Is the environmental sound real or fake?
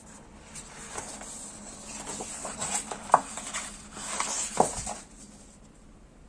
real